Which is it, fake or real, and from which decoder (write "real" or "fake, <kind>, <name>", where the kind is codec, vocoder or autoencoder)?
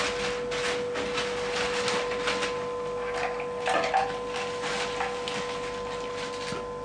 real